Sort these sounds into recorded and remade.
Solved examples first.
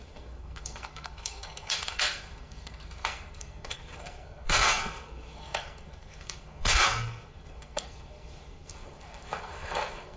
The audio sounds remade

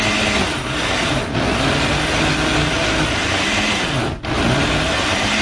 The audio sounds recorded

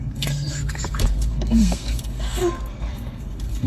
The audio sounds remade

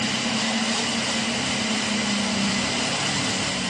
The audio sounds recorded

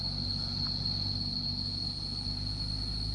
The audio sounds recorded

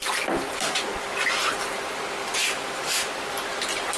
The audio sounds recorded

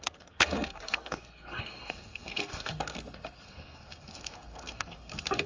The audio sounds remade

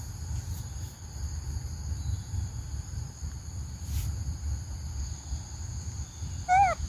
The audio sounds recorded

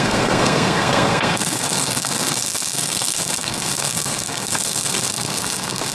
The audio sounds remade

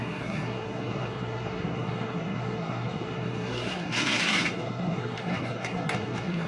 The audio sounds remade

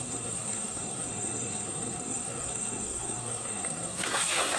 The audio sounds remade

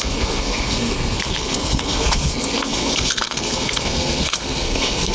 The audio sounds remade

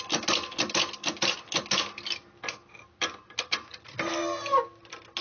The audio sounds recorded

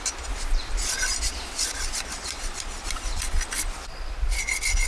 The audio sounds recorded